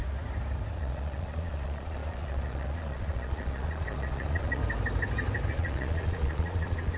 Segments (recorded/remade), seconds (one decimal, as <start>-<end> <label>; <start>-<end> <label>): 0.0-0.8 recorded; 0.8-4.6 remade; 4.6-5.5 recorded; 5.5-7.0 remade

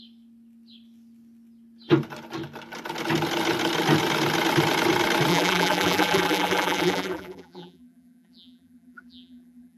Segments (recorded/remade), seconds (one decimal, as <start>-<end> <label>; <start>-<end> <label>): 0.0-5.3 recorded; 5.3-9.8 remade

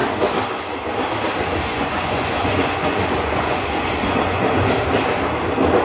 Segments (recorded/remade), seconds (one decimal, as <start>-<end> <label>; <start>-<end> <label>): 0.0-1.7 recorded; 1.7-4.5 remade; 4.5-5.8 recorded